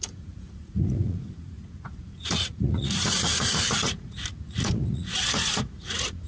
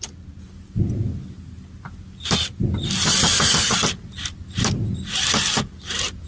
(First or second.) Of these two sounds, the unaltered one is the second